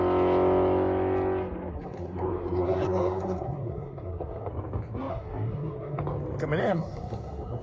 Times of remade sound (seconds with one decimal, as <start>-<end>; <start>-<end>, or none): 1.7-4.5; 5.1-6.0; 6.6-7.6